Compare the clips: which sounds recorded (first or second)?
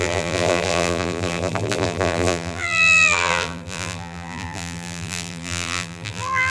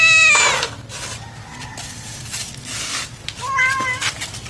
second